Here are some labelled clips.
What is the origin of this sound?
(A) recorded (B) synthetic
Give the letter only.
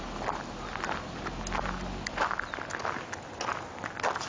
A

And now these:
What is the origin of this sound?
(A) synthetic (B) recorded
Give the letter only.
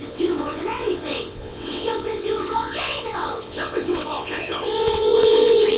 A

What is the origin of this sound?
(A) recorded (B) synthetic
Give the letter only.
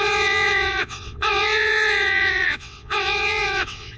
B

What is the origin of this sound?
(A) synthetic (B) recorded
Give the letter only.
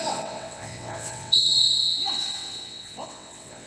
A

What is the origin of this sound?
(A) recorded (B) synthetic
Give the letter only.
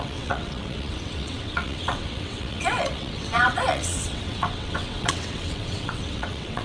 B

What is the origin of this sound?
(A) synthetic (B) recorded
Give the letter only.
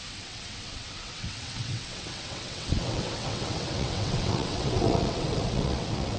A